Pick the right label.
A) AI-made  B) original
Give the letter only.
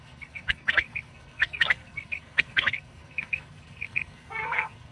A